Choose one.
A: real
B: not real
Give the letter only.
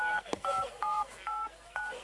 B